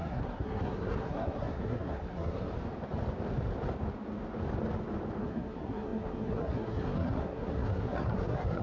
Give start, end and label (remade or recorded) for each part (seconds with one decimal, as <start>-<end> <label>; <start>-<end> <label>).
0.0-2.5 remade; 2.5-5.2 recorded; 5.2-8.6 remade